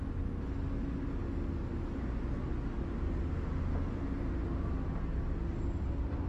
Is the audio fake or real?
real